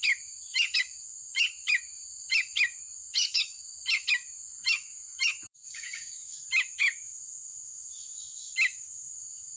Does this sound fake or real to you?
fake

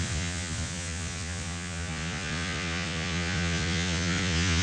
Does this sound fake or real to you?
fake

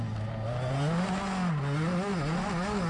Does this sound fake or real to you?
real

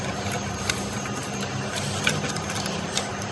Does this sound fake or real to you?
real